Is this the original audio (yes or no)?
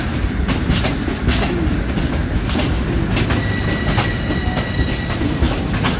yes